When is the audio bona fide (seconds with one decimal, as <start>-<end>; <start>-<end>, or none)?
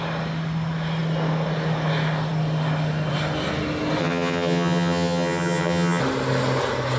0.0-4.0; 6.0-7.0